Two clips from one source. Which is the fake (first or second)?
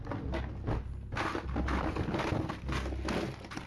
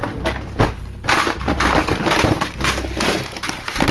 second